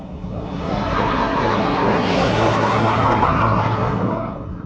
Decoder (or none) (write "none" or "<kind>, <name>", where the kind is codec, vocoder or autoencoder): codec, SNAC